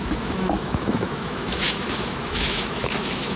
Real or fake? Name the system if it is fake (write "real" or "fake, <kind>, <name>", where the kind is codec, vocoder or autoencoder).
fake, autoencoder, DAC-VAE